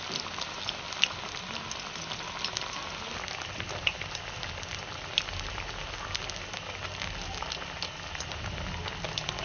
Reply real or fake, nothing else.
real